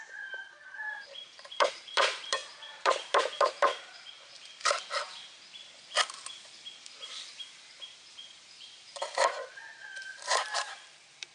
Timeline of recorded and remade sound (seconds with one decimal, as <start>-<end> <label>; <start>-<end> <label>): 0.0-4.4 remade; 4.4-7.3 recorded; 7.3-11.3 remade